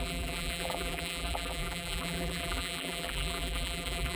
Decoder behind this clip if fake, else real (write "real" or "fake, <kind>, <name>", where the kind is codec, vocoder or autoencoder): fake, vocoder, BigVGAN v2